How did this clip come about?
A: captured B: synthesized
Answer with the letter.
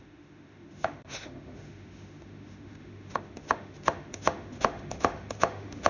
B